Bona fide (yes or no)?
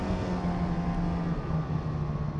yes